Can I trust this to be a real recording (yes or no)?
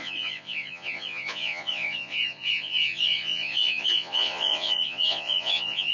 no